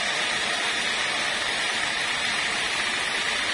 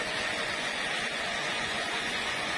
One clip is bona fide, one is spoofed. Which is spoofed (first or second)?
second